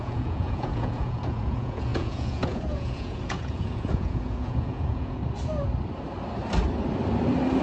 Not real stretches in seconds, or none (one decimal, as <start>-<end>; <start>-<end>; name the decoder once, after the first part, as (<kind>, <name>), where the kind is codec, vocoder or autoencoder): 0.0-5.2 (vocoder, Vocos)